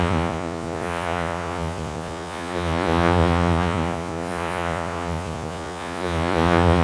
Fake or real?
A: fake